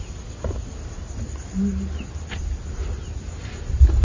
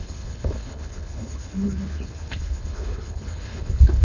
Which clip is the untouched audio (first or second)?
first